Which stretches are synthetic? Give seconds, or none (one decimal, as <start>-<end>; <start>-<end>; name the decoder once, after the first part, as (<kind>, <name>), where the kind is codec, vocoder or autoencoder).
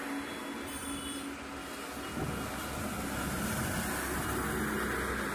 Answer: none